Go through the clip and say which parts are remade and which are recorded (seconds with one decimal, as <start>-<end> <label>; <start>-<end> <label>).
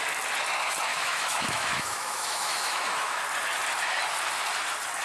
0.0-0.9 recorded; 0.9-3.2 remade; 3.2-5.0 recorded